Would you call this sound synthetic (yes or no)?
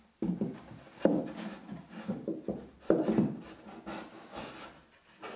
no